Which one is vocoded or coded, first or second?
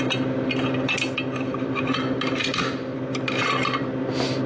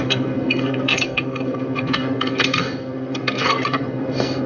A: second